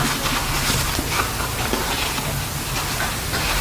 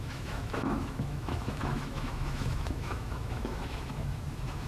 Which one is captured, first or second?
first